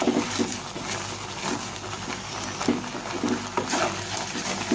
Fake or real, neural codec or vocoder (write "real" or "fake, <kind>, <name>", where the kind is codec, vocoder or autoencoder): real